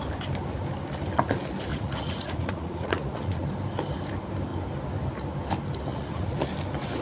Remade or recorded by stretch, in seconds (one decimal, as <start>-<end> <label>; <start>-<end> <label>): 0.0-1.7 recorded; 1.7-3.5 remade; 3.5-5.9 recorded; 5.9-6.5 remade; 6.5-7.0 recorded